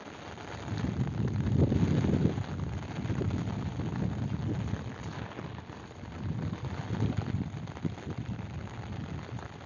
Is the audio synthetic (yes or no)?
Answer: no